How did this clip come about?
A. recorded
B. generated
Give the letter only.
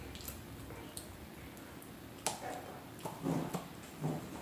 A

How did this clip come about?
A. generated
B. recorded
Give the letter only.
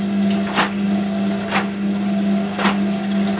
B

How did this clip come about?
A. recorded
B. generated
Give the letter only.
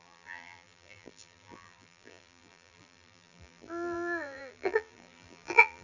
B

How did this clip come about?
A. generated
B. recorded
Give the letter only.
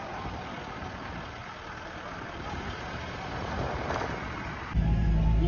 B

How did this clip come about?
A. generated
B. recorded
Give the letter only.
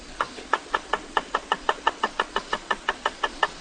A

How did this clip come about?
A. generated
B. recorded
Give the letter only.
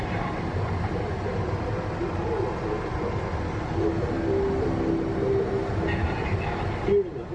B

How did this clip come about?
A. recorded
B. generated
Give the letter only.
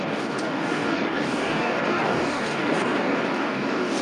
B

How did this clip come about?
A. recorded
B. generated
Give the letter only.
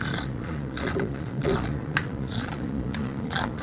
B